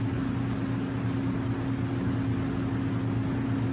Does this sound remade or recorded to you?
recorded